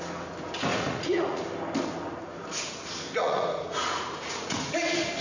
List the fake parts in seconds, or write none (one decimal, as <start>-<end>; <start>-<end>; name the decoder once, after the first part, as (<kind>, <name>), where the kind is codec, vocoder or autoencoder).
0.7-1.4 (vocoder, Vocos); 3.2-4.7